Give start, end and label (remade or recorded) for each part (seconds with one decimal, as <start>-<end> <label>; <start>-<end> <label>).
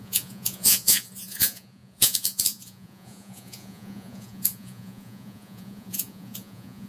0.0-6.9 remade